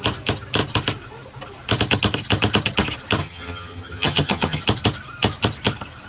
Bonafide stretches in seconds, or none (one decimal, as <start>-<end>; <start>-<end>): 0.0-3.2; 4.6-6.1